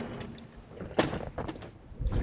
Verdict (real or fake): real